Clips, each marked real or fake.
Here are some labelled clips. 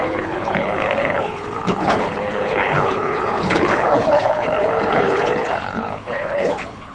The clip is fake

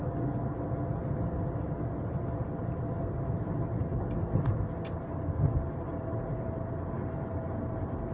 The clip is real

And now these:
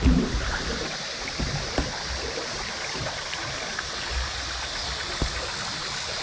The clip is real